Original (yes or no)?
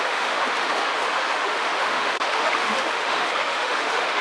no